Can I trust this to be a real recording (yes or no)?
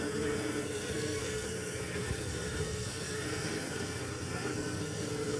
no